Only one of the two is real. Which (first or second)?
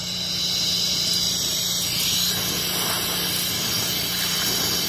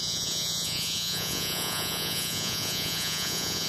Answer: first